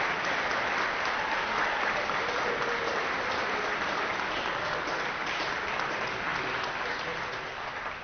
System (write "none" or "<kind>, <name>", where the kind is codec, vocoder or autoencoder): none